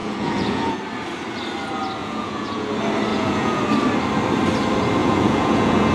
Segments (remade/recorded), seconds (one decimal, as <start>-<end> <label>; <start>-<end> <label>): 0.0-0.8 remade; 0.8-2.0 recorded; 2.0-2.7 remade; 2.7-3.1 recorded; 3.1-3.6 remade; 3.6-5.0 recorded; 5.0-5.9 remade

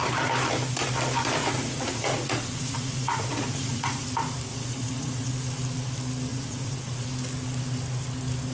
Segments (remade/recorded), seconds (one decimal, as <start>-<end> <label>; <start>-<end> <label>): 0.0-1.4 recorded; 1.4-4.1 remade; 4.1-4.5 recorded; 4.5-5.3 remade; 5.3-6.3 recorded; 6.3-7.1 remade; 7.1-8.5 recorded

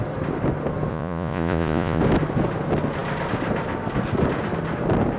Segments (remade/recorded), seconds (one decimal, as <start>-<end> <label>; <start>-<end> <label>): 0.0-0.9 recorded; 0.9-2.0 remade; 2.0-5.2 recorded

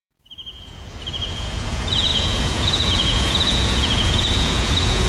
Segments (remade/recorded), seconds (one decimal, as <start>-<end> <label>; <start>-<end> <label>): 0.0-5.1 remade

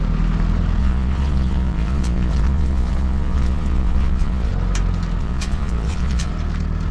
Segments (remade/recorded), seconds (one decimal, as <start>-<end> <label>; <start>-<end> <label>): 0.0-0.8 recorded; 0.8-4.5 remade; 4.5-5.2 recorded; 5.2-6.3 remade; 6.3-6.9 recorded

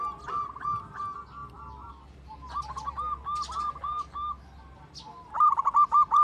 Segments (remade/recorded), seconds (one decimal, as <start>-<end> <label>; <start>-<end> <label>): 0.0-6.2 recorded

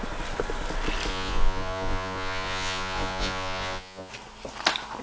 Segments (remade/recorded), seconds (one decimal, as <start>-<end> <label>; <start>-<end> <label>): 0.0-1.1 recorded; 1.1-4.1 remade; 4.1-5.0 recorded

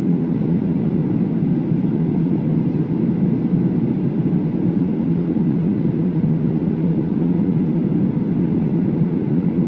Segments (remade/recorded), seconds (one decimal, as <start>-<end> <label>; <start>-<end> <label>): 0.0-1.0 remade; 1.0-1.9 recorded; 1.9-2.5 remade; 2.5-4.7 recorded; 4.7-7.8 remade; 7.8-8.4 recorded; 8.4-9.7 remade